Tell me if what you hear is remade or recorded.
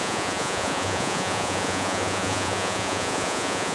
remade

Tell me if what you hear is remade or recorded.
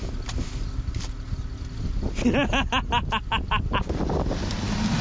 recorded